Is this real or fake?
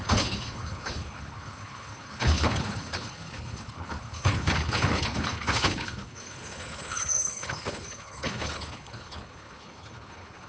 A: fake